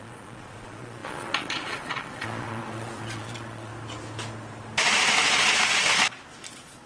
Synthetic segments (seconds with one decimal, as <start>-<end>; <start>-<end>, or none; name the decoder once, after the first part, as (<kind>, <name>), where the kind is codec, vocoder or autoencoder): 0.0-3.7 (vocoder, Vocos); 6.5-6.9